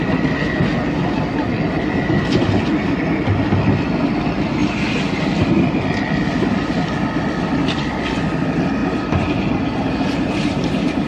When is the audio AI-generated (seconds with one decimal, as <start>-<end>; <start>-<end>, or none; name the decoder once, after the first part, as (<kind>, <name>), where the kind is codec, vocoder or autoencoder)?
8.8-10.7 (vocoder, BigVGAN v2)